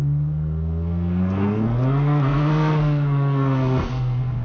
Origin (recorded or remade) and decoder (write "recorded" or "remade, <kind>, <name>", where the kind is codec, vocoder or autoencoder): remade, codec, SNAC